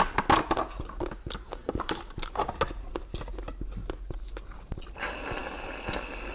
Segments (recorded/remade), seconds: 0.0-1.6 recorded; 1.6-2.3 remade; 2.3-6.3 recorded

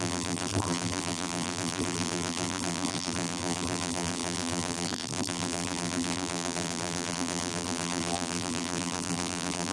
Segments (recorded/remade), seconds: 0.0-9.7 remade

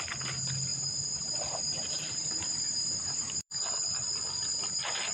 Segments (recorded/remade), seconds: 0.0-0.7 recorded; 0.7-3.6 remade; 3.6-5.1 recorded

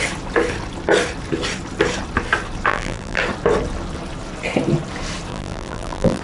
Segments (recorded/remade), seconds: 0.0-2.7 recorded; 2.7-3.2 remade; 3.2-5.3 recorded; 5.3-6.2 remade